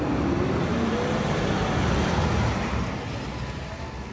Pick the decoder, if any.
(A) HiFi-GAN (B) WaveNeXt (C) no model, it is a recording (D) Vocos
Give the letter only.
C